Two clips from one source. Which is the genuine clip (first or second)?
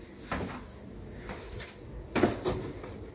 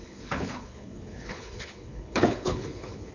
first